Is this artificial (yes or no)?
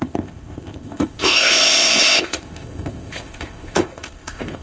yes